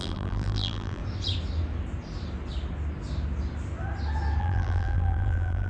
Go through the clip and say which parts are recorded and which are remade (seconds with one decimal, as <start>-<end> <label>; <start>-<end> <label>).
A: 0.0-1.0 remade; 1.0-4.4 recorded; 4.4-5.7 remade